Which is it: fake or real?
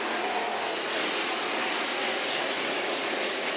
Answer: fake